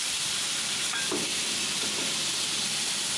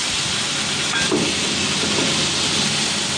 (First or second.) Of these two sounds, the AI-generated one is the first